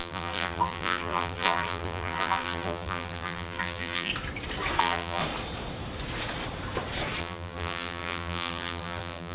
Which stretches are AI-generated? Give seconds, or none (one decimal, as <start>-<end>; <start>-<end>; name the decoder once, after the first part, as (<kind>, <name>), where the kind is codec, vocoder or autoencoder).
0.0-4.1 (vocoder, BigVGAN v2); 4.8-5.2; 7.2-9.3